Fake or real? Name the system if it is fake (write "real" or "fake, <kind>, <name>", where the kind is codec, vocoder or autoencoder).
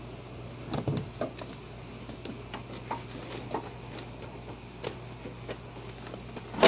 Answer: real